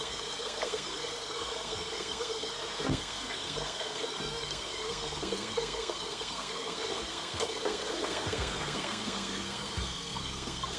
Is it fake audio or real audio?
fake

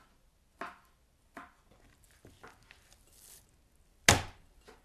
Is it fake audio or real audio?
real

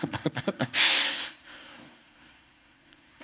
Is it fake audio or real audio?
fake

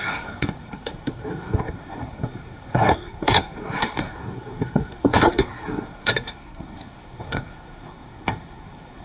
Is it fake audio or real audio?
fake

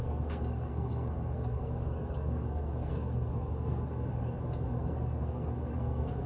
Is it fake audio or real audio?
fake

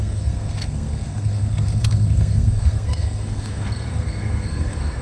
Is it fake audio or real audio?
fake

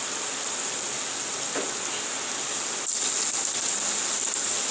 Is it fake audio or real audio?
real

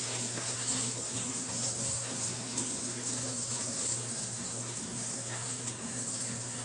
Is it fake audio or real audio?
fake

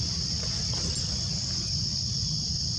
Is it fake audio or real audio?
real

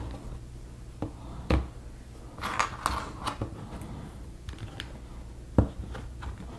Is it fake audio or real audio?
real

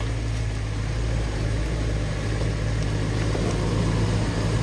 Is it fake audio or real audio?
real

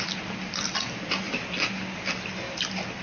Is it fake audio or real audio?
real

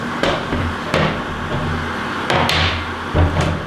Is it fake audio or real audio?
real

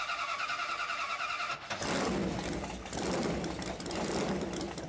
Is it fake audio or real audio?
real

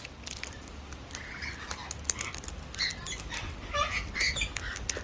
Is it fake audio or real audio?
real